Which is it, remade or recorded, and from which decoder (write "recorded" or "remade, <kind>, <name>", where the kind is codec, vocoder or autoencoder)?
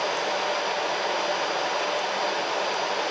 recorded